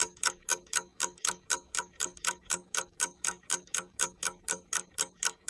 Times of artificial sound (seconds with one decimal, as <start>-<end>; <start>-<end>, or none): 0.0-5.5